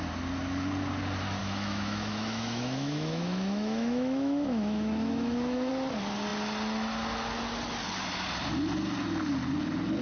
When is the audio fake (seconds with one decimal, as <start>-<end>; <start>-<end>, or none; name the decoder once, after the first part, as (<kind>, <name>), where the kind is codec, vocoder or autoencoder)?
1.4-5.7 (autoencoder, DAC-VAE)